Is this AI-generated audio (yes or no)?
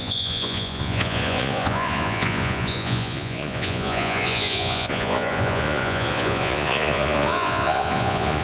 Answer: yes